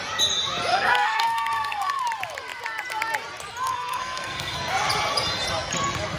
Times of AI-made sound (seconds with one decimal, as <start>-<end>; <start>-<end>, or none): 0.7-2.0; 3.7-4.7